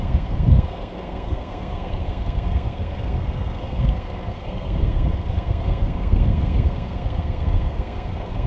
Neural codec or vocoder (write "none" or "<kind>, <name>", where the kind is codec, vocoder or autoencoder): codec, SNAC